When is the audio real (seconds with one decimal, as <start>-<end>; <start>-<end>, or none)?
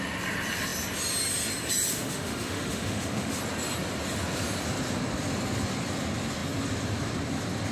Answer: 0.0-1.9; 3.4-7.7